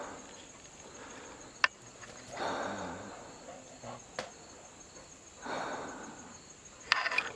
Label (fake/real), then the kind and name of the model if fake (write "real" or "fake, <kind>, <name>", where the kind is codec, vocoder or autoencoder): real